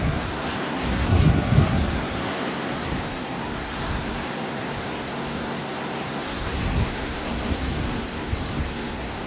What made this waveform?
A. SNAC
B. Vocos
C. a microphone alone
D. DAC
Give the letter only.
A